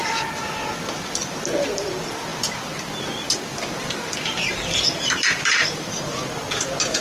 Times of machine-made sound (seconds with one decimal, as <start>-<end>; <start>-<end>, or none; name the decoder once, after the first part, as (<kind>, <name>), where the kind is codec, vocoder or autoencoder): 0.0-0.5 (vocoder, BigVGAN v2); 3.5-5.9